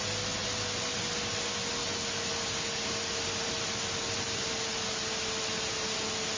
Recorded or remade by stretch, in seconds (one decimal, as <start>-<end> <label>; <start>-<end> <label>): 0.0-6.4 recorded